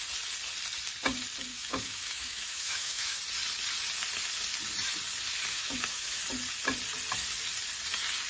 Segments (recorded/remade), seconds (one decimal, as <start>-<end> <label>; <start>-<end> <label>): 0.0-1.5 recorded; 1.5-3.2 remade; 3.2-5.5 recorded; 5.5-6.2 remade; 6.2-8.3 recorded